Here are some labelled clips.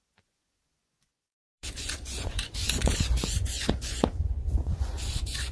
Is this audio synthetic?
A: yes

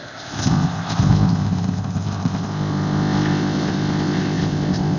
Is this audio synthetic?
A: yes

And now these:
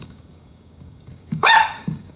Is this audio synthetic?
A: yes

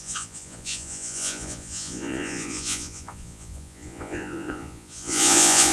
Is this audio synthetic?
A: yes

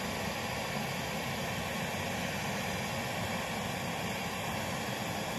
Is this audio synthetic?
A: no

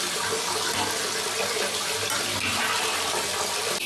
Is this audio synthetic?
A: no